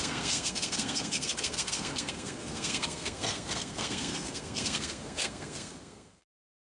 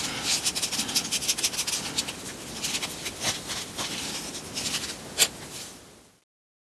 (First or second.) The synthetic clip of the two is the first